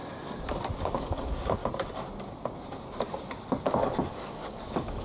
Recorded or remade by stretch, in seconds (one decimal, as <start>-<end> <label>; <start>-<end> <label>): 0.0-0.8 recorded; 0.8-1.6 remade; 1.6-3.7 recorded; 3.7-5.0 remade